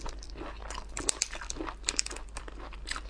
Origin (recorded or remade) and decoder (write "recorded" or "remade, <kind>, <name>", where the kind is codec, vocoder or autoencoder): recorded